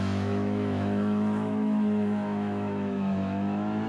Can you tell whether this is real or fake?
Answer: fake